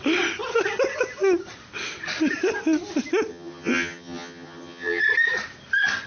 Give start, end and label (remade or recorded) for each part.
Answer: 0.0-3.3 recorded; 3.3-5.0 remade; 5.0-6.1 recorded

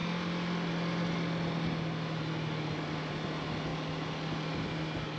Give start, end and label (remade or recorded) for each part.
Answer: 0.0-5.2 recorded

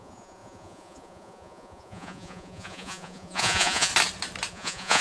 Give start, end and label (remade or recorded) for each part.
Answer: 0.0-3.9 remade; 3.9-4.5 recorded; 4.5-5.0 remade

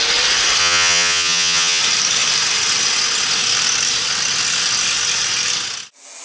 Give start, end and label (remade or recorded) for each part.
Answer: 0.0-0.6 recorded; 0.6-1.8 remade; 1.8-6.2 recorded